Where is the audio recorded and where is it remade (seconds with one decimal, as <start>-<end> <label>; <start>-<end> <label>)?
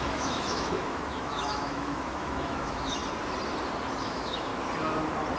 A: 0.0-3.0 remade; 3.0-4.0 recorded; 4.0-4.5 remade; 4.5-5.4 recorded